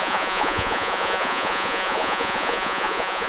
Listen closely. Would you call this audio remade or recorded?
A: remade